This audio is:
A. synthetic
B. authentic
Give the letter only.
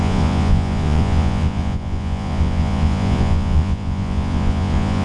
A